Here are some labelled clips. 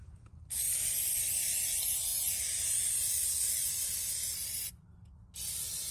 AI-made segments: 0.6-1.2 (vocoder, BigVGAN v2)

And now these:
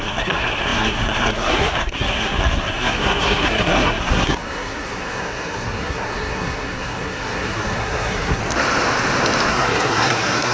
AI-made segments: 0.0-8.4 (codec, SNAC); 9.5-10.5

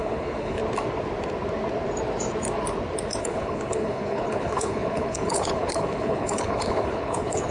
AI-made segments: 0.0-0.6 (codec, HILCodec); 3.2-7.5

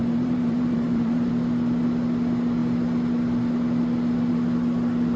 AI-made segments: 0.0-1.3 (vocoder, BigVGAN v2)

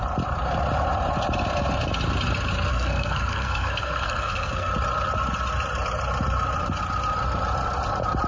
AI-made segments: 2.7-4.7 (codec, SNAC)

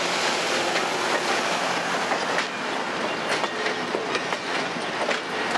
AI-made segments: 3.9-4.8 (vocoder, Vocos)